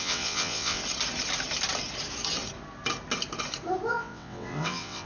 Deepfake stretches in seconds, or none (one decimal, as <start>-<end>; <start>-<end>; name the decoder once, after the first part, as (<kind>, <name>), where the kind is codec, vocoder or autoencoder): 0.0-0.8 (vocoder, WaveNeXt); 3.9-5.1